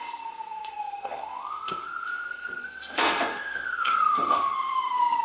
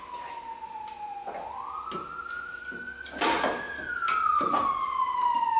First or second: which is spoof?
first